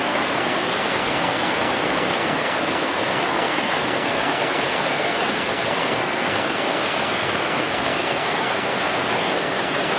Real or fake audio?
fake